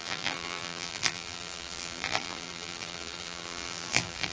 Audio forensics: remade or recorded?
remade